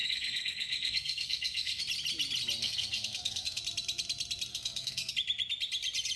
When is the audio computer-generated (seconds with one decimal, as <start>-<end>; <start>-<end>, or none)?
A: 0.0-1.8; 2.6-3.6; 4.5-5.1